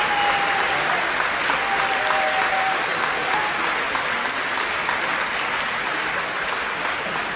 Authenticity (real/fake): real